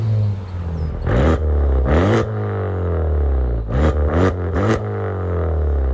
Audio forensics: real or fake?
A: real